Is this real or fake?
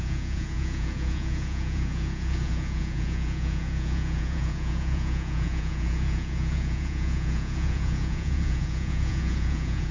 fake